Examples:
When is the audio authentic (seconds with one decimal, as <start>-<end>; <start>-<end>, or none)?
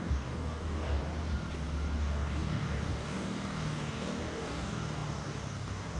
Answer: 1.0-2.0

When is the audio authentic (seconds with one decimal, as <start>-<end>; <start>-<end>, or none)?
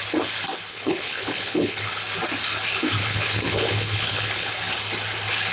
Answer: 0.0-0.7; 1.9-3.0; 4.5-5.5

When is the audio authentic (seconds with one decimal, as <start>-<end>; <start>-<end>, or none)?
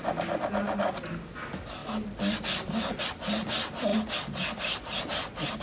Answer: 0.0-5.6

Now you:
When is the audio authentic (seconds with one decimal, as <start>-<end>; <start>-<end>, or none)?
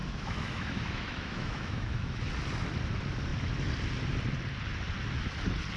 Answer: 2.3-5.8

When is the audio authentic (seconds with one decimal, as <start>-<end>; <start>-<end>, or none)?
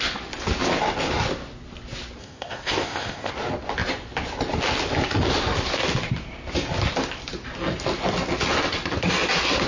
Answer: 0.0-2.2; 3.3-9.7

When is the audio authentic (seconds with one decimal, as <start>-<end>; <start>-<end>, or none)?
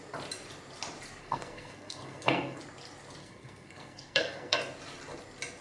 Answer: 0.0-1.2; 2.6-3.2; 4.6-5.6